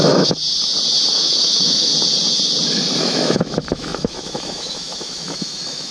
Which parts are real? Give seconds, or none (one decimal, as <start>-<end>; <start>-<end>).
0.4-1.1; 1.9-3.0